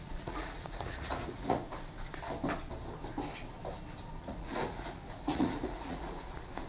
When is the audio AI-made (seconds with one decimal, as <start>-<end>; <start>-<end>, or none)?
0.0-1.7; 4.2-6.7